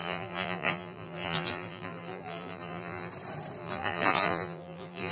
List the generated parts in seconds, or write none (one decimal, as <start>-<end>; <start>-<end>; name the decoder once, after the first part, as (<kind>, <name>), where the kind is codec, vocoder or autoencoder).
0.0-3.1 (vocoder, BigVGAN v2); 3.6-5.1